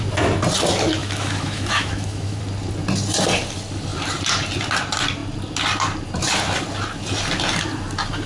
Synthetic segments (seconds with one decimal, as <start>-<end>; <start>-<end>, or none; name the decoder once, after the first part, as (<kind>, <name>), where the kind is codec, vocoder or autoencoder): 1.0-2.4 (autoencoder, DAC-VAE)